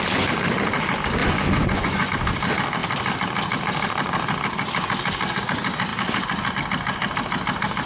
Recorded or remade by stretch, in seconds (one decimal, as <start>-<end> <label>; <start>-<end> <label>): 0.0-1.2 recorded; 1.2-2.1 remade; 2.1-7.9 recorded